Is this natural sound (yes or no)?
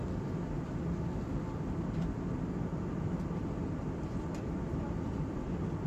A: yes